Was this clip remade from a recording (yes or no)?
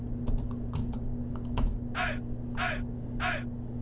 no